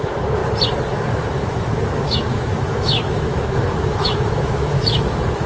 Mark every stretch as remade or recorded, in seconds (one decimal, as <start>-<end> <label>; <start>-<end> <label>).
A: 0.0-0.4 remade; 0.4-0.9 recorded; 0.9-5.5 remade